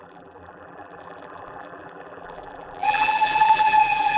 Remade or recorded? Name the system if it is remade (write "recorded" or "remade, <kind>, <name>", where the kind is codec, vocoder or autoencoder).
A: remade, vocoder, BigVGAN v2